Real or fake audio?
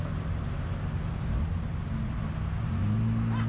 real